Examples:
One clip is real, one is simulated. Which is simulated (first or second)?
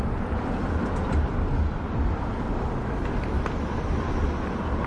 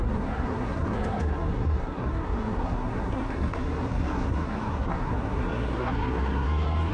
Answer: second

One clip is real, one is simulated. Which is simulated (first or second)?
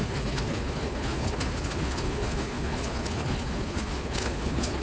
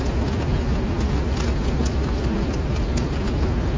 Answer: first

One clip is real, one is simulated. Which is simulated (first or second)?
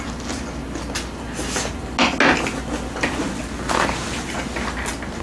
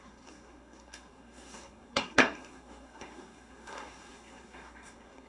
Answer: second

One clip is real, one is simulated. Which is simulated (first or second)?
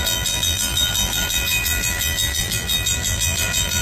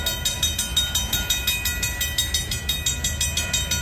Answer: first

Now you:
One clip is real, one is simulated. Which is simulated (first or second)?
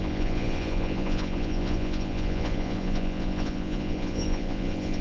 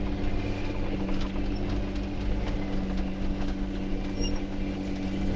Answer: first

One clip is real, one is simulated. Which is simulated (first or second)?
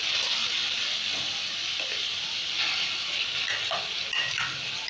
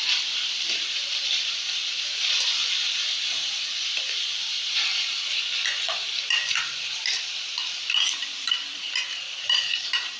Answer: second